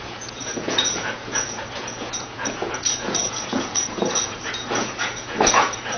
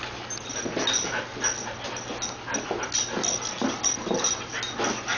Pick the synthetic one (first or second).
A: first